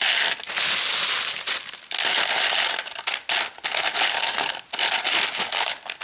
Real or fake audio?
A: real